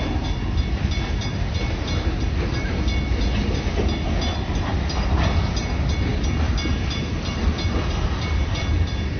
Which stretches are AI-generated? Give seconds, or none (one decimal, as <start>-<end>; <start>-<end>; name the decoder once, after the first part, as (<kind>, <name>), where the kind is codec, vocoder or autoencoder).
none